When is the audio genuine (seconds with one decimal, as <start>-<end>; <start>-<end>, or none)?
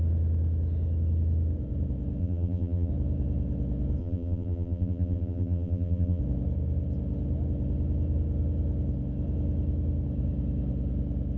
0.0-2.2; 2.9-4.0; 6.2-11.4